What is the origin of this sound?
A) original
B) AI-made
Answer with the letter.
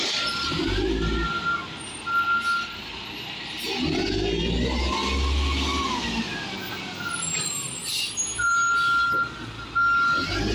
A